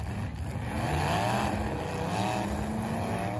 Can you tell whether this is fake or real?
real